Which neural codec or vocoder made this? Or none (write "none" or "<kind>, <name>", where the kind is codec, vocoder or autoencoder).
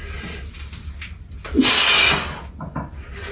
none